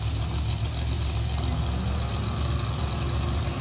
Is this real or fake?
real